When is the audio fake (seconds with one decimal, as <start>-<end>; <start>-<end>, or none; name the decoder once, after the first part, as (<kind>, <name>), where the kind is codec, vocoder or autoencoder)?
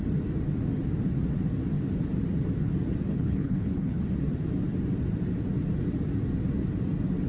3.1-4.0 (codec, HILCodec)